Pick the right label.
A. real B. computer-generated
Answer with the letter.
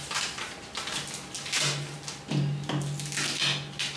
A